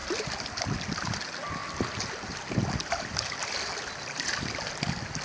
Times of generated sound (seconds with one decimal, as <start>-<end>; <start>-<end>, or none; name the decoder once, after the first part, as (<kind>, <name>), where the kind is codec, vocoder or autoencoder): none